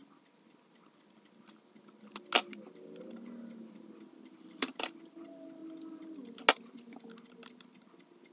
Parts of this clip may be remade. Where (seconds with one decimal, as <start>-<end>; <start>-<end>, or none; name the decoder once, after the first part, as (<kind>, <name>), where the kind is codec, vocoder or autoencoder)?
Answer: none